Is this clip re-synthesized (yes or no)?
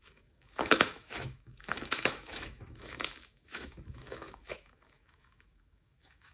yes